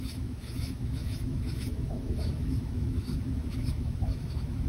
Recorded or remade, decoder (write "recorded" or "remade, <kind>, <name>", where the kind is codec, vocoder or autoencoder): remade, autoencoder, DAC-VAE